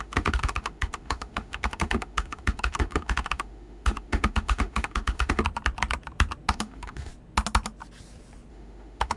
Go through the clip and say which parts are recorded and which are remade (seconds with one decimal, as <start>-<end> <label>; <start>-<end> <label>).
0.0-5.4 remade; 5.4-6.5 recorded; 6.5-7.1 remade; 7.1-8.5 recorded; 8.5-9.2 remade